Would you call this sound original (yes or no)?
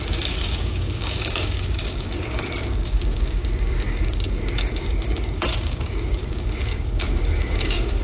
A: no